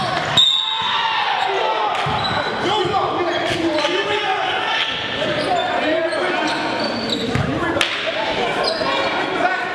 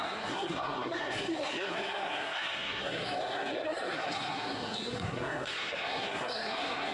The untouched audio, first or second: first